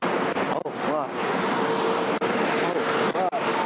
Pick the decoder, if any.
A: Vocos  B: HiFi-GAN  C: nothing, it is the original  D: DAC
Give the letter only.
C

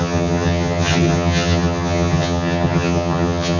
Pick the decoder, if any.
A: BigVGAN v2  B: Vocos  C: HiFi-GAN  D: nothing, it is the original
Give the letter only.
C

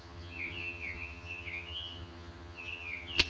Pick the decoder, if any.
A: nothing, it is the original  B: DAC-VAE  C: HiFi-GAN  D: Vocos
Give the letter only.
C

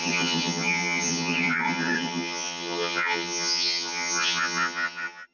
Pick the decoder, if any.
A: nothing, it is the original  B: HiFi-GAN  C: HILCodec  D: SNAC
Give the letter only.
B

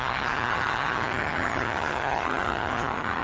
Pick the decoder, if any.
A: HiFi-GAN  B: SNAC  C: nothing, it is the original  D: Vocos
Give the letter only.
A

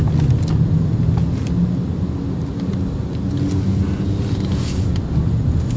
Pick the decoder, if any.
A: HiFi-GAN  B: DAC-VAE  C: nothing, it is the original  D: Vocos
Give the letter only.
C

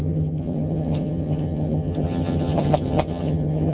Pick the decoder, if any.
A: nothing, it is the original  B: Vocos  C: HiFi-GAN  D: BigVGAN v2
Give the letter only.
C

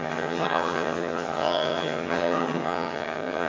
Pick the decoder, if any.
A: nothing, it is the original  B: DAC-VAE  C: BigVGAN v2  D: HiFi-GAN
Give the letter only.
D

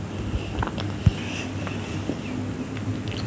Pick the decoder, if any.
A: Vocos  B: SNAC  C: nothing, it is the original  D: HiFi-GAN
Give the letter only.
C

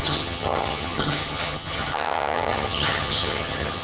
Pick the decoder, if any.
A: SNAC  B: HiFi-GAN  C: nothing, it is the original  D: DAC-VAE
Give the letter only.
B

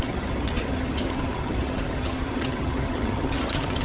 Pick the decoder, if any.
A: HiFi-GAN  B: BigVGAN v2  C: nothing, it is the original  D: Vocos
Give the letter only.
A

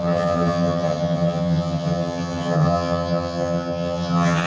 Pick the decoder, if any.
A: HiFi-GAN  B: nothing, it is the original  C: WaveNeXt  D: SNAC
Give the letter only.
A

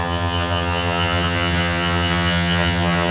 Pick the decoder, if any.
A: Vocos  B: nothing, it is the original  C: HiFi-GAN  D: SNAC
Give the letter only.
C